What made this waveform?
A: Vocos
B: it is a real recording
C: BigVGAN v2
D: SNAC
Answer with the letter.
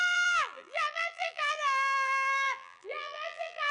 C